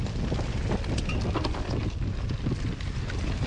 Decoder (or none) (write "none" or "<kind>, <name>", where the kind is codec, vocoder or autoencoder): none